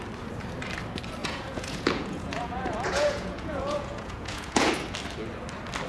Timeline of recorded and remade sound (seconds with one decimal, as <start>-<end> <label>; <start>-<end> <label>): 0.0-1.2 recorded; 1.2-4.7 remade; 4.7-5.9 recorded